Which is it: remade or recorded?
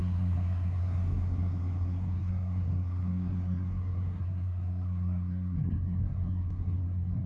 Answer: remade